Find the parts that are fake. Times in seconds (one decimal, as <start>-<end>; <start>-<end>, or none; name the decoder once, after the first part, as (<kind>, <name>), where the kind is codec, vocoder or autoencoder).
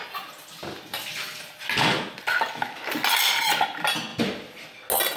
none